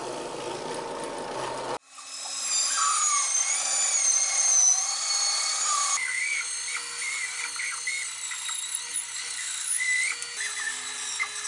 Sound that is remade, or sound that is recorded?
recorded